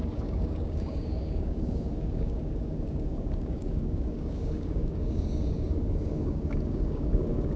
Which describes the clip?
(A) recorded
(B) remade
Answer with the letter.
B